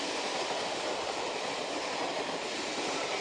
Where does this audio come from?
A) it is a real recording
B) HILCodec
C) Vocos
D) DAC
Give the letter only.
A